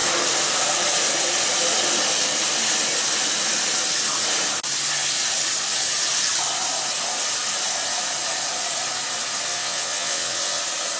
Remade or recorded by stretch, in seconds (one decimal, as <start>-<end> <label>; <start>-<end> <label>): 0.0-9.5 recorded; 9.5-10.6 remade; 10.6-11.0 recorded